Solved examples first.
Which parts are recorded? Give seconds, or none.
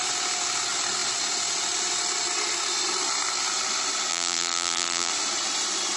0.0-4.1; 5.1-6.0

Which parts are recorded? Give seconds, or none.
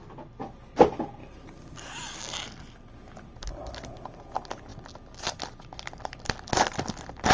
0.0-7.3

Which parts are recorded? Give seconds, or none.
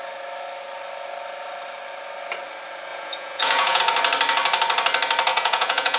0.0-2.9; 3.8-5.3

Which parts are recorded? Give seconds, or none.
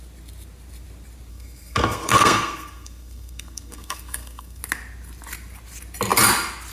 0.0-1.3; 4.6-6.7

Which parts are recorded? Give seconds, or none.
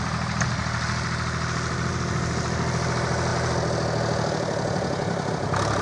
0.0-5.8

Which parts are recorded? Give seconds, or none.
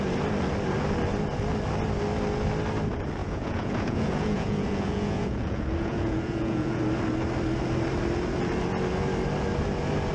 0.0-3.2; 6.8-10.1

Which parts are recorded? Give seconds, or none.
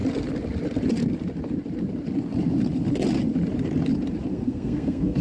0.0-4.3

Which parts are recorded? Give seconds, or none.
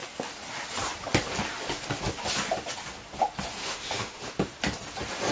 0.0-3.6; 4.2-5.3